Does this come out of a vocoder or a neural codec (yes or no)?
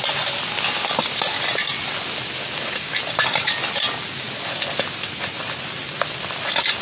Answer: no